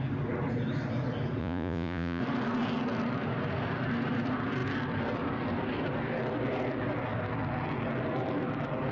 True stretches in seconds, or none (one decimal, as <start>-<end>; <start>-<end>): 0.0-1.4; 2.2-8.9